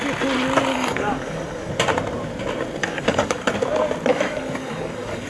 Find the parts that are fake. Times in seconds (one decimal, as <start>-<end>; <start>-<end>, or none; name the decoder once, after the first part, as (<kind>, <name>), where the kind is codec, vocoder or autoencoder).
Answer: 0.7-1.7 (codec, DAC); 2.8-3.5; 4.1-5.3